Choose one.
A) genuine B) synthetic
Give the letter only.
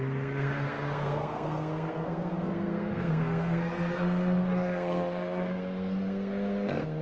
B